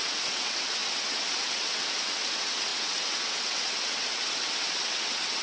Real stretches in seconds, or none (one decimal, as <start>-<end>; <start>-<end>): none